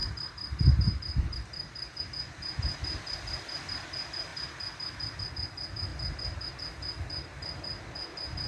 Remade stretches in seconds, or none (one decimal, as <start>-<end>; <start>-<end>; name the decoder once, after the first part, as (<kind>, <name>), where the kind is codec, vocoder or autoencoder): 0.0-2.0 (vocoder, BigVGAN v2)